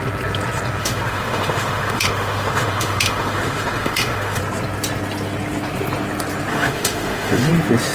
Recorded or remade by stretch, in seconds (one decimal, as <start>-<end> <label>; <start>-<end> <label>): 0.0-0.8 recorded; 0.8-4.4 remade; 4.4-6.5 recorded; 6.5-7.5 remade; 7.5-7.9 recorded